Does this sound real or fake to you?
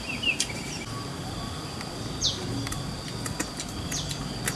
real